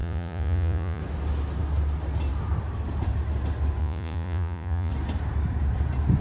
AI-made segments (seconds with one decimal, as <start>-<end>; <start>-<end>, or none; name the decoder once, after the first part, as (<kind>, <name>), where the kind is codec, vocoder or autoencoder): 0.0-1.0 (vocoder, Vocos); 3.8-4.9